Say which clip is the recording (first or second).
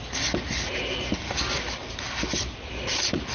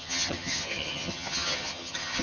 first